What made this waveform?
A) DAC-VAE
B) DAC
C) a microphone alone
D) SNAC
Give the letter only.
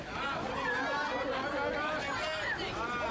C